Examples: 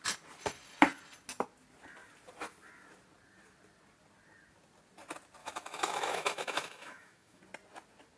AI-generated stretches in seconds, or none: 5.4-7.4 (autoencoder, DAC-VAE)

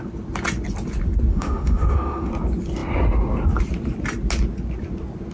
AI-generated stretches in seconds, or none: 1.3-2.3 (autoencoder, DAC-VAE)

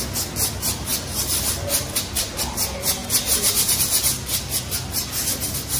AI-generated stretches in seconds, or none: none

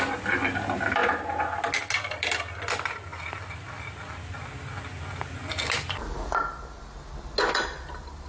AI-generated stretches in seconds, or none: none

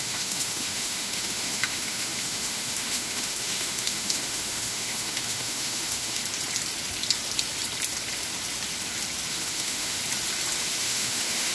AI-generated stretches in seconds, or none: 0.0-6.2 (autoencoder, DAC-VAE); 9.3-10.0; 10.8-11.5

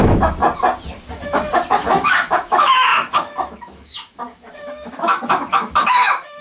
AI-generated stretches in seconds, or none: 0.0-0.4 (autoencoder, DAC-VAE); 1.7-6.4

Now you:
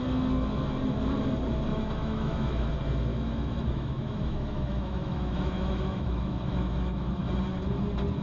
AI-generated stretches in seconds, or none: 1.7-2.7 (autoencoder, DAC-VAE); 3.1-7.3